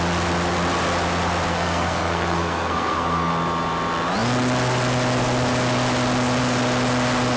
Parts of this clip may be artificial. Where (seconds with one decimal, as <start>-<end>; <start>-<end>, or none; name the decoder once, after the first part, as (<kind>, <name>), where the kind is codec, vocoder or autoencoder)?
1.5-3.3 (codec, SNAC)